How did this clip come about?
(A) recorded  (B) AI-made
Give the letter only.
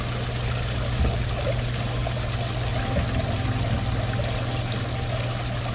A